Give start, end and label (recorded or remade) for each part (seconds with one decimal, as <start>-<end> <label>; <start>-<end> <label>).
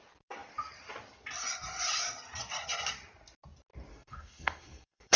0.0-3.9 recorded; 3.9-5.2 remade